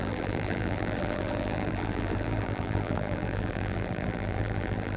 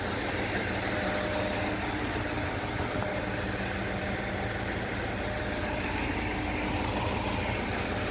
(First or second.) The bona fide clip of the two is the second